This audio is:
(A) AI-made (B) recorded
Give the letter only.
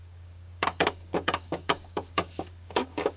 A